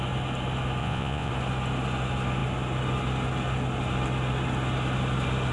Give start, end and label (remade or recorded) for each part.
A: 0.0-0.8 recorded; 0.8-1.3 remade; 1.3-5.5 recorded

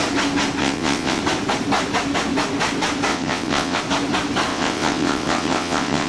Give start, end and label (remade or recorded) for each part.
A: 0.0-0.6 recorded; 0.6-1.2 remade; 1.2-3.1 recorded; 3.1-3.8 remade; 3.8-4.5 recorded; 4.5-6.1 remade

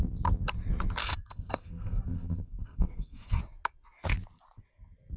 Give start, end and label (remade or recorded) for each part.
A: 0.0-1.0 recorded; 1.0-3.4 remade; 3.4-5.2 recorded

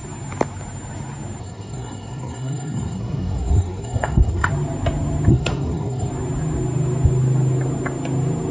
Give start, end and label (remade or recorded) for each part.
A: 0.0-1.4 recorded; 1.4-4.5 remade; 4.5-5.3 recorded; 5.3-6.1 remade; 6.1-8.5 recorded

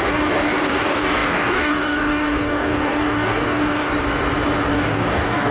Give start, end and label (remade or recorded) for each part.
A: 0.0-3.9 remade; 3.9-4.7 recorded; 4.7-5.5 remade

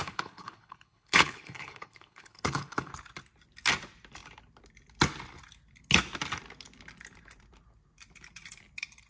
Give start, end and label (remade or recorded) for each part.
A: 0.0-2.9 remade; 2.9-9.1 recorded